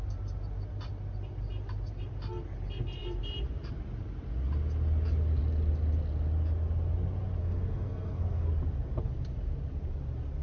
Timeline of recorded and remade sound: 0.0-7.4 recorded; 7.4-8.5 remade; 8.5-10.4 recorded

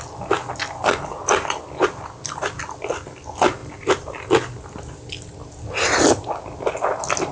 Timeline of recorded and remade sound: 0.0-7.3 recorded

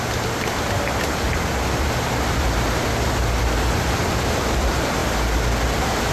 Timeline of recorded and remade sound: 0.0-6.1 recorded

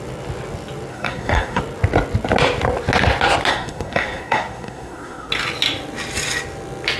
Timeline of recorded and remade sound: 0.0-0.9 recorded; 0.9-1.6 remade; 1.6-3.5 recorded; 3.5-5.3 remade; 5.3-7.0 recorded